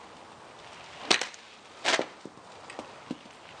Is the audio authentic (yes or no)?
yes